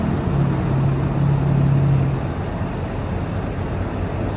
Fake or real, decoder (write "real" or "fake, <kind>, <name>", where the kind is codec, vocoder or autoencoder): real